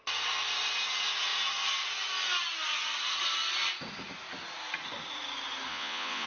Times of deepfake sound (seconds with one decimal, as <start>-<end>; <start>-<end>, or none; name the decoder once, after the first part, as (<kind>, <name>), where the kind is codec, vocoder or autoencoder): 5.7-6.3 (vocoder, Vocos)